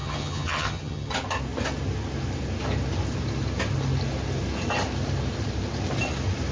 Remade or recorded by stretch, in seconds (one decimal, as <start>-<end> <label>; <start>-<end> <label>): 0.0-1.1 remade; 1.1-6.5 recorded

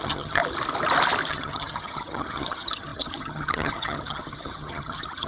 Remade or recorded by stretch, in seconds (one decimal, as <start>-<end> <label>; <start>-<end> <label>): 0.0-0.4 remade; 0.4-1.3 recorded; 1.3-5.3 remade

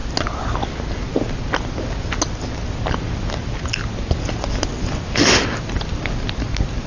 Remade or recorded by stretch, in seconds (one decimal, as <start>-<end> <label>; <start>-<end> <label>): 0.0-6.9 recorded

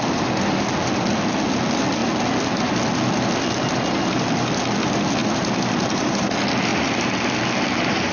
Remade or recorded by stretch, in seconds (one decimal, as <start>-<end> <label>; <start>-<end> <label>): 0.0-8.1 recorded

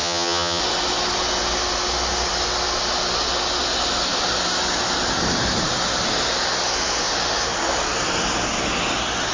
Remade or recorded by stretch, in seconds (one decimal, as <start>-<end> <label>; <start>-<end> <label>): 0.0-0.6 remade; 0.6-9.3 recorded

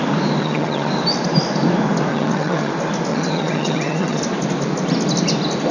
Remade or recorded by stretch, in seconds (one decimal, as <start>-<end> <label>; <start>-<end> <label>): 0.0-0.4 recorded; 0.4-0.9 remade; 0.9-2.1 recorded; 2.1-2.7 remade; 2.7-3.1 recorded; 3.1-4.2 remade; 4.2-5.7 recorded